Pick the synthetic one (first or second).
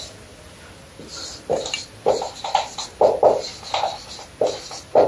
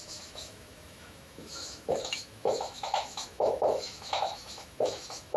second